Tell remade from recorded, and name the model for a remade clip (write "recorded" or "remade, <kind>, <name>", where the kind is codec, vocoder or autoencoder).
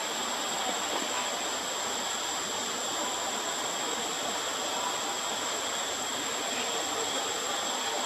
recorded